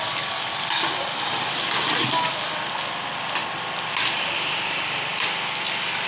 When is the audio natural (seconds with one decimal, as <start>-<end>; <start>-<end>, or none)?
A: 0.0-3.4; 3.9-6.1